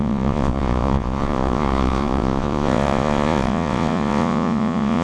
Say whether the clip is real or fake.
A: fake